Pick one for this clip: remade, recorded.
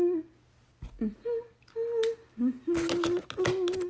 recorded